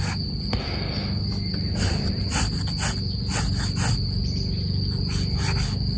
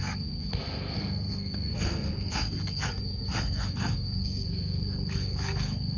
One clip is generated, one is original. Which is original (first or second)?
first